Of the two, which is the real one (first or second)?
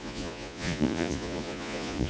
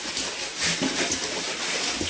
second